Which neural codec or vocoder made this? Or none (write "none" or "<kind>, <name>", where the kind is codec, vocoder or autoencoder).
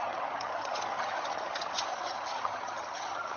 vocoder, HiFi-GAN